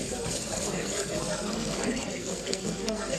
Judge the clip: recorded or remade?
remade